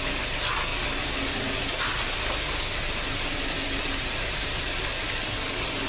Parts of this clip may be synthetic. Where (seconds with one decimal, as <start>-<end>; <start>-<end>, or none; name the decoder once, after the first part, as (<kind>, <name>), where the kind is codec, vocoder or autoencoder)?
none